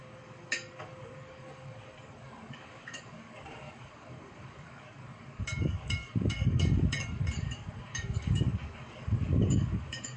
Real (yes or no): no